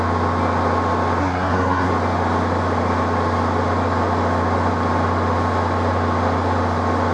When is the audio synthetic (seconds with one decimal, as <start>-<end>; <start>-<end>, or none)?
1.2-1.9